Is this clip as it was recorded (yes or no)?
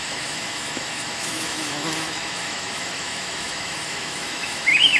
no